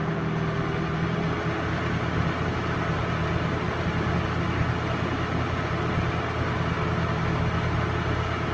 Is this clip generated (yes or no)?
no